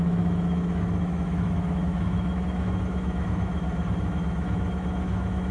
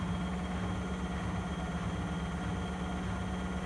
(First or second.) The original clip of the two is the second